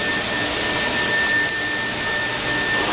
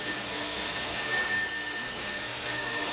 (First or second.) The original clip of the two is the first